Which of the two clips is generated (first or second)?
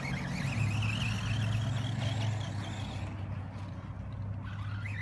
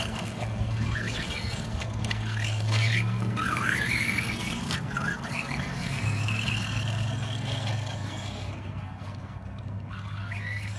second